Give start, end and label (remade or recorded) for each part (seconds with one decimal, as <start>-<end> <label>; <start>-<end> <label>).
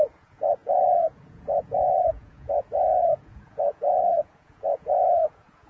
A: 0.0-5.7 remade